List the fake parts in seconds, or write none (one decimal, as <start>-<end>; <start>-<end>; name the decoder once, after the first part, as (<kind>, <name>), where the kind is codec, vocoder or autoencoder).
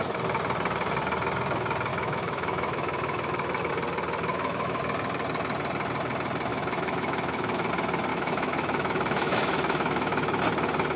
1.9-3.7 (autoencoder, DAC-VAE); 4.3-4.8; 6.5-7.7; 8.1-10.4